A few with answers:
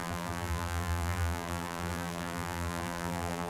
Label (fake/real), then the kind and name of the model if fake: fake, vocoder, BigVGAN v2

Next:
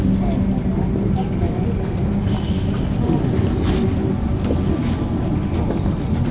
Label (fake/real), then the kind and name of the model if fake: real